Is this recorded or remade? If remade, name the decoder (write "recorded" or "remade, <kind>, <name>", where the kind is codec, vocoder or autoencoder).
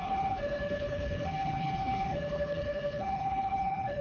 remade, codec, HILCodec